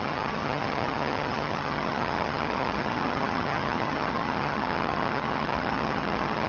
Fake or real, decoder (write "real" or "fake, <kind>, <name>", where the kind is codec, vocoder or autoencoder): fake, vocoder, HiFi-GAN